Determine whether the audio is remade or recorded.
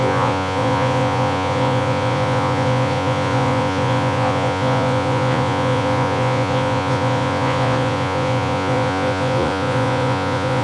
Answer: remade